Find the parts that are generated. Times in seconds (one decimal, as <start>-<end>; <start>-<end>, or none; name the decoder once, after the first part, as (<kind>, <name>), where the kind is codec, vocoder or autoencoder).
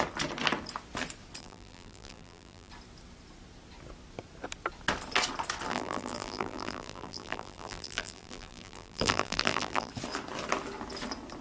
1.4-2.7 (vocoder, BigVGAN v2); 5.7-9.9